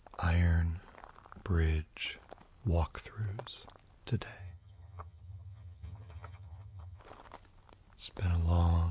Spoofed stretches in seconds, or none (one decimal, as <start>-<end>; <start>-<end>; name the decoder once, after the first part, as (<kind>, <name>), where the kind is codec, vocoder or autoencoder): 4.4-7.0 (vocoder, HiFi-GAN)